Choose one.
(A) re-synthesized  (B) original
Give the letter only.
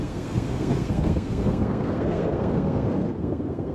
A